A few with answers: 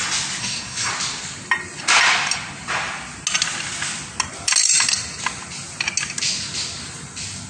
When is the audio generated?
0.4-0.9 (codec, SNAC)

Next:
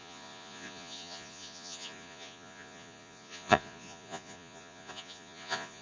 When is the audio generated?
0.0-5.8 (vocoder, Vocos)

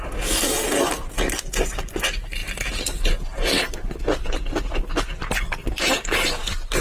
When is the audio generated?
none

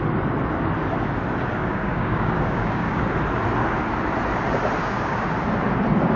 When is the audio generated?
1.6-3.0 (codec, DAC); 4.8-5.3

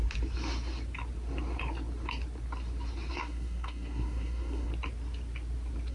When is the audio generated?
3.1-4.7 (codec, SNAC)

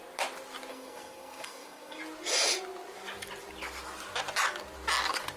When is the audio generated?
0.7-2.0 (codec, SNAC)

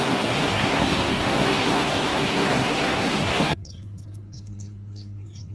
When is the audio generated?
0.0-5.5 (codec, SNAC)